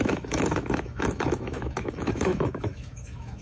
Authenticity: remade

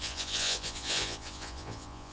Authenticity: remade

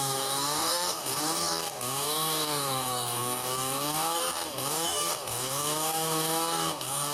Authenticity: remade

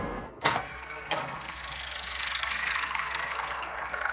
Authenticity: remade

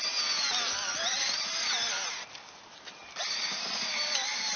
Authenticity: recorded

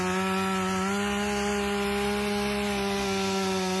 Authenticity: recorded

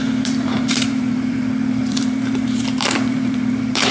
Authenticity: remade